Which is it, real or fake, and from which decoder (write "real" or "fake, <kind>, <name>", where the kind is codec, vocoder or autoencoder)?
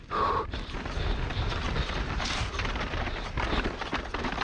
real